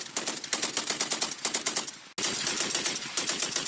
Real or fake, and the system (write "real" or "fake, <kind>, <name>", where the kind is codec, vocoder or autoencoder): real